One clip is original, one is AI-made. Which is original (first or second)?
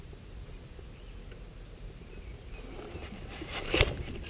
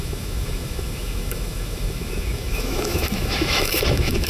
first